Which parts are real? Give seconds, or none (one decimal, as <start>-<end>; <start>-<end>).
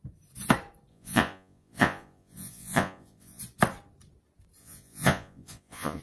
0.0-0.9; 3.4-4.6